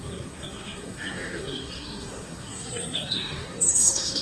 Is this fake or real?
fake